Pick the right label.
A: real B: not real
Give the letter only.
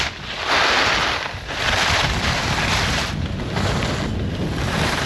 A